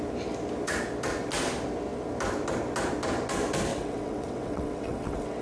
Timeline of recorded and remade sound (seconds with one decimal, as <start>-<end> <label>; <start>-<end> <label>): 0.0-3.7 recorded; 3.7-5.4 remade